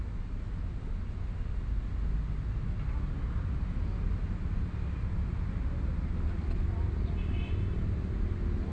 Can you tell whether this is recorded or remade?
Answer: recorded